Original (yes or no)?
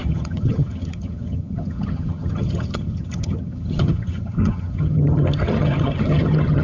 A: no